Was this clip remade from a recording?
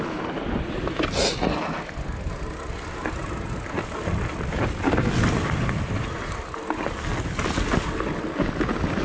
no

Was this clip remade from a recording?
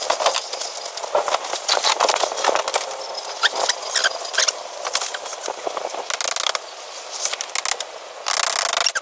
no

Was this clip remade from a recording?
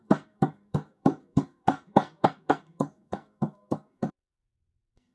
yes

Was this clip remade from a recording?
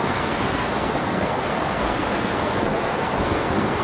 yes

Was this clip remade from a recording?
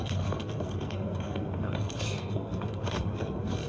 yes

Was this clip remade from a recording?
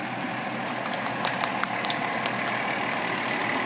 no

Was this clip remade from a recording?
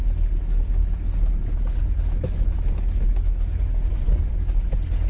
no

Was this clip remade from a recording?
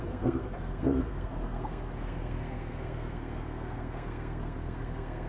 yes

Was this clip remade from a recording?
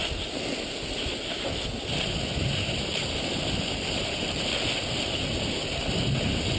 no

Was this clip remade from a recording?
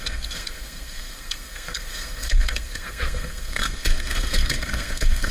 yes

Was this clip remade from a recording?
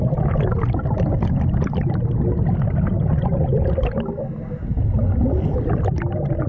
no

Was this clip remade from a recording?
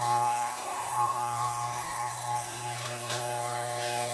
yes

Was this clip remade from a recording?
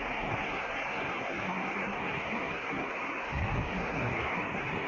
yes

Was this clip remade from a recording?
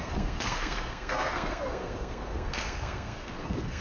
yes